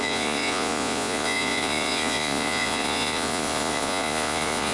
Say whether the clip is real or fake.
fake